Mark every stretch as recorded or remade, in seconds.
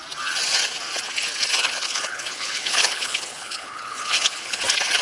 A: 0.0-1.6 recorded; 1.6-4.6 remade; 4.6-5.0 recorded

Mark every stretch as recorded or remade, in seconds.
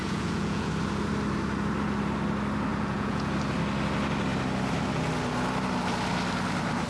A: 0.0-0.7 remade; 0.7-2.7 recorded; 2.7-3.3 remade; 3.3-6.9 recorded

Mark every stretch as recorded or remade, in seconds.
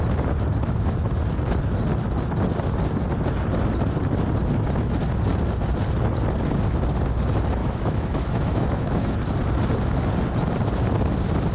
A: 0.0-7.6 recorded; 7.6-9.2 remade; 9.2-11.5 recorded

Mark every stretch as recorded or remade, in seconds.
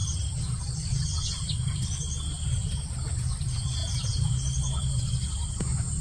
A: 0.0-6.0 recorded